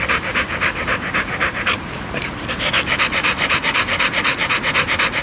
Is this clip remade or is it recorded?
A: remade